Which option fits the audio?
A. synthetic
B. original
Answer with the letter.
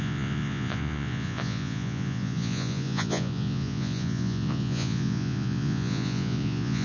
A